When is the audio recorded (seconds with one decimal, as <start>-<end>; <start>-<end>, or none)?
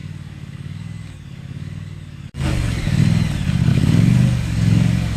3.0-3.7